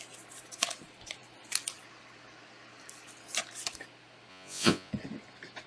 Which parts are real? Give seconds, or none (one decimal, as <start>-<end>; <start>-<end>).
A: 0.0-4.3; 4.9-5.7